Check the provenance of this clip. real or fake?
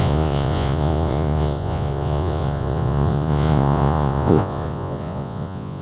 fake